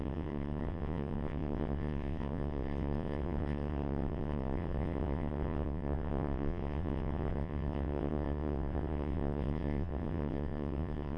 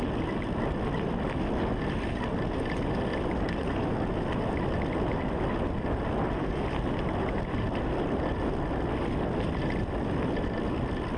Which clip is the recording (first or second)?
second